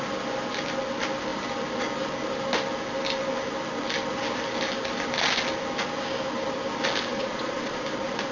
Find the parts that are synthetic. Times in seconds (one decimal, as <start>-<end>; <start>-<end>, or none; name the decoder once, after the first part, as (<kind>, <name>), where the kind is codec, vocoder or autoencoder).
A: 7.1-7.8 (vocoder, Vocos)